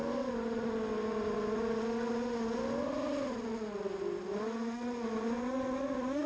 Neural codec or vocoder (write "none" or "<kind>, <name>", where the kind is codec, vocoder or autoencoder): none